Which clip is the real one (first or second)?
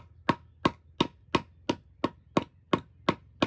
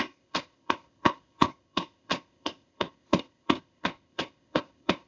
first